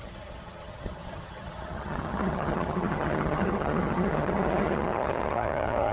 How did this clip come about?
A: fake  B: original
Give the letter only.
A